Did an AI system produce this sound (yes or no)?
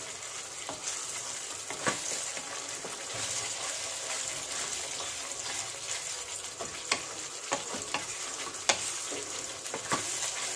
no